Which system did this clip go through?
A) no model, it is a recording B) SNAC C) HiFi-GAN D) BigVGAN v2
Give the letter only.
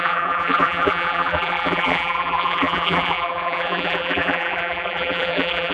D